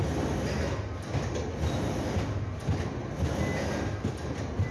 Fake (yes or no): no